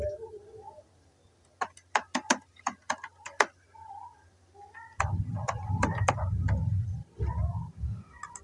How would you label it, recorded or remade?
recorded